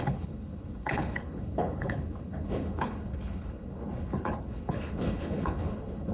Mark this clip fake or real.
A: fake